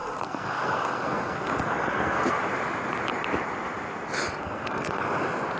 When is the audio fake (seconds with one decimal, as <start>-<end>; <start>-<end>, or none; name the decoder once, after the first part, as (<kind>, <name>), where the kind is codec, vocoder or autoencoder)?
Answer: 0.0-2.4 (codec, SNAC); 4.4-5.0